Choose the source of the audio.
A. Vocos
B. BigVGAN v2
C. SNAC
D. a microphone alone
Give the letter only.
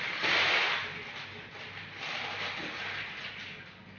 D